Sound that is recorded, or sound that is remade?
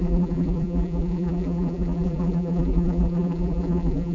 remade